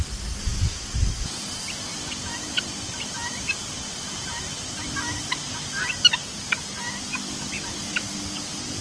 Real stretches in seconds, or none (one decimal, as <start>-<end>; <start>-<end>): 0.0-8.8